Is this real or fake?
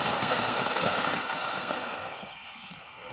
fake